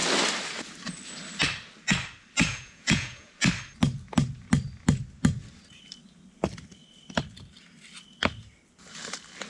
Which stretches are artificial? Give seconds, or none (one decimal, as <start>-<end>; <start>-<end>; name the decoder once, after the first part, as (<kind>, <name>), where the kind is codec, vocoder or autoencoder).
2.4-3.3 (vocoder, Vocos)